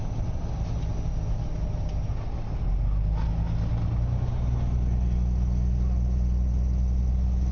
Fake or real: real